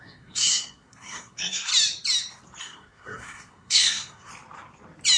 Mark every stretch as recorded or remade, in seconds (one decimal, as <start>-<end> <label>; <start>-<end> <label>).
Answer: 0.0-1.7 remade; 1.7-2.6 recorded; 2.6-4.3 remade; 4.3-5.2 recorded